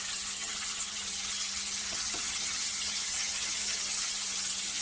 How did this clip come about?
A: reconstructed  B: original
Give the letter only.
A